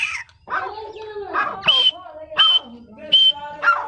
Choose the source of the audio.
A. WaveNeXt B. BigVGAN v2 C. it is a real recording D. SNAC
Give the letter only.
C